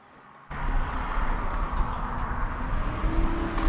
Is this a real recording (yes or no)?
yes